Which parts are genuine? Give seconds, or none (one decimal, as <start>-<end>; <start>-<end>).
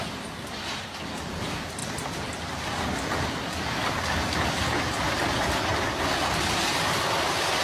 0.0-7.6